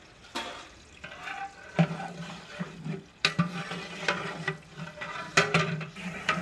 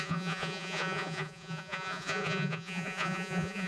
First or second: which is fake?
second